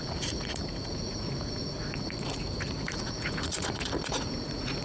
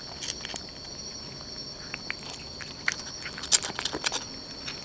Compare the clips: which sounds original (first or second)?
second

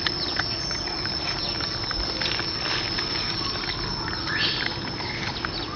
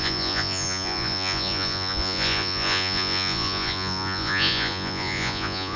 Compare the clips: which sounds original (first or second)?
first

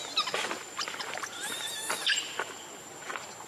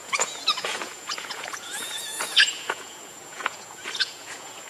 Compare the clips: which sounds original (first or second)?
first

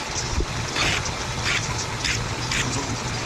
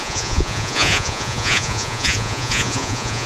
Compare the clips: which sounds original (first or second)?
first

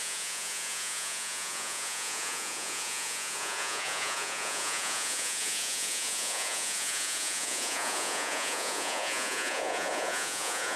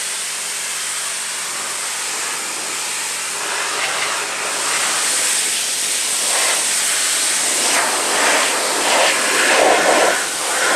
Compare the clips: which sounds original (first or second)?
second